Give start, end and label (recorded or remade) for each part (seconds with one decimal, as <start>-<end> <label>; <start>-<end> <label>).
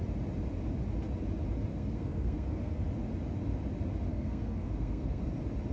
0.0-1.7 recorded; 1.7-2.8 remade; 2.8-4.1 recorded; 4.1-5.2 remade; 5.2-5.7 recorded